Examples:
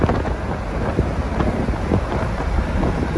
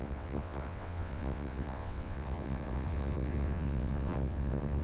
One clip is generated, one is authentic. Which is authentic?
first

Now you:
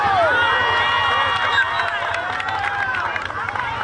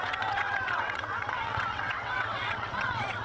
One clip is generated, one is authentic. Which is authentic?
first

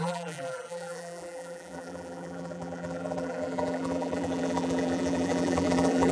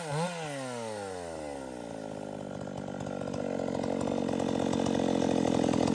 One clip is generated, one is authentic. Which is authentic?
second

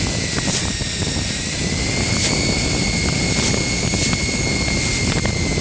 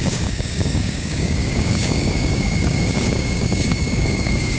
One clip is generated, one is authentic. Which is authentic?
first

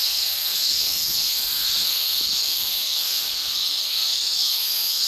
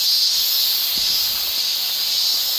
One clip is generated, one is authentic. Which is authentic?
second